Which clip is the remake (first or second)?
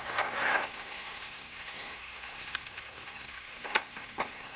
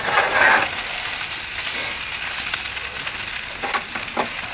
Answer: first